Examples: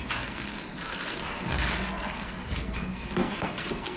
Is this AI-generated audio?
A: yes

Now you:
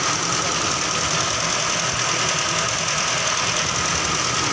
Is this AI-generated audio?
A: no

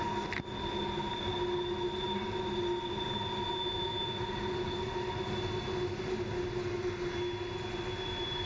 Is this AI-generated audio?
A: no